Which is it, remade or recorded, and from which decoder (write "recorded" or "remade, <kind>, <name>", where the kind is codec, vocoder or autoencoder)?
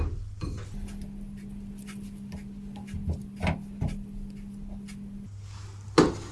recorded